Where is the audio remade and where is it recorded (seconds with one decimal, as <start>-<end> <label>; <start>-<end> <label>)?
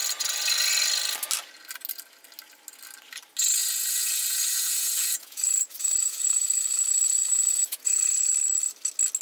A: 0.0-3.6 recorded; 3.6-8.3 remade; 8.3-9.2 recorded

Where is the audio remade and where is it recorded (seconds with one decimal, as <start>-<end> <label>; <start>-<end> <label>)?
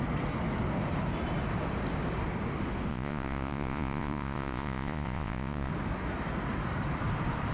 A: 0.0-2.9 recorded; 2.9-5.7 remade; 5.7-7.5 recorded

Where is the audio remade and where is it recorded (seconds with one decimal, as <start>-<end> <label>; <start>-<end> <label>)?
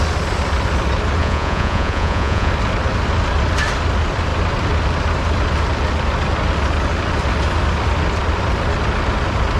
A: 0.0-1.2 recorded; 1.2-2.5 remade; 2.5-9.6 recorded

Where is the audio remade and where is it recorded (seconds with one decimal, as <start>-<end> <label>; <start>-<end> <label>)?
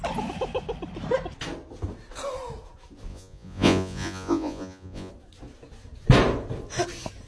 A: 0.0-3.1 recorded; 3.1-5.1 remade; 5.1-7.3 recorded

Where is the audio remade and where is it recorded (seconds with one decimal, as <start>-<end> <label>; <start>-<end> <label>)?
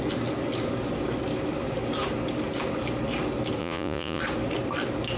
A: 0.0-3.6 recorded; 3.6-4.2 remade; 4.2-5.2 recorded